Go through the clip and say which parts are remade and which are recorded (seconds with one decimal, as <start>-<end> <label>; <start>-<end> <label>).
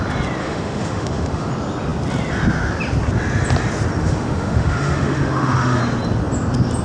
0.0-0.4 recorded; 0.4-1.5 remade; 1.5-4.0 recorded; 4.0-5.8 remade; 5.8-6.8 recorded